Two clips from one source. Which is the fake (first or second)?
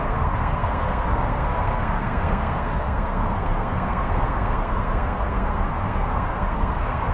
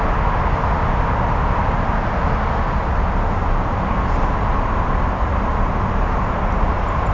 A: first